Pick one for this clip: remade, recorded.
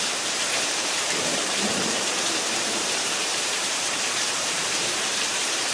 remade